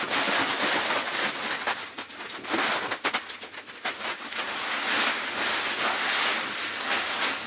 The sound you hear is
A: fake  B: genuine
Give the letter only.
B